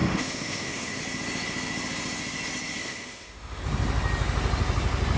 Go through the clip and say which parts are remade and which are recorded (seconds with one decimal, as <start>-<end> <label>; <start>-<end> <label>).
0.0-1.0 remade; 1.0-2.8 recorded; 2.8-3.6 remade; 3.6-5.2 recorded